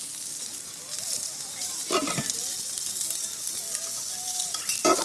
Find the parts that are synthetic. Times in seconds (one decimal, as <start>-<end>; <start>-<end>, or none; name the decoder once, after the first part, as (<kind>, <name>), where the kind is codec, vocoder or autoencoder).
none